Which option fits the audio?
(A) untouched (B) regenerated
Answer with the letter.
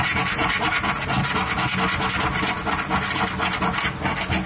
A